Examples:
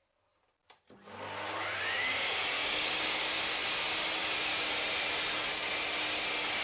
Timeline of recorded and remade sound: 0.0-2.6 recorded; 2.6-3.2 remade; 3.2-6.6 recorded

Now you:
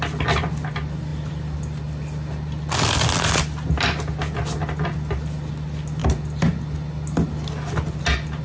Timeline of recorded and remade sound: 0.0-8.4 recorded

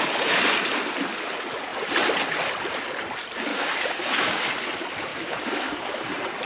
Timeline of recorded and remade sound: 0.0-3.5 recorded; 3.5-4.4 remade; 4.4-5.1 recorded; 5.1-5.9 remade; 5.9-6.5 recorded